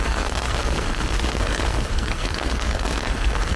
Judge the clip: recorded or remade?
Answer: remade